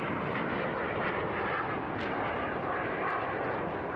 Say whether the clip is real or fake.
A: real